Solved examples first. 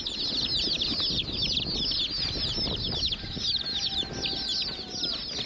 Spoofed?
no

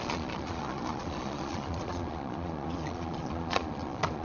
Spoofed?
yes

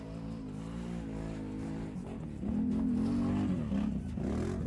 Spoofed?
no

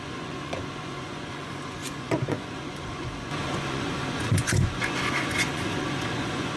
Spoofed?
yes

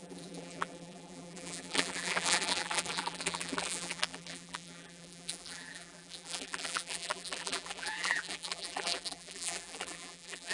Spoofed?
yes